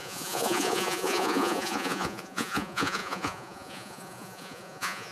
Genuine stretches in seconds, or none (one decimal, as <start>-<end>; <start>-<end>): none

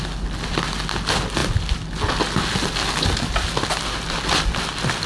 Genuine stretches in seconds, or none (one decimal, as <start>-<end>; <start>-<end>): 0.0-5.1